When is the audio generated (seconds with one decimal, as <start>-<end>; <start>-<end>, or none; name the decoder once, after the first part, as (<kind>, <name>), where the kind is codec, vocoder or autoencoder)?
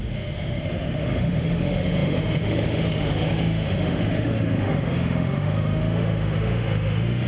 0.0-7.3 (autoencoder, DAC-VAE)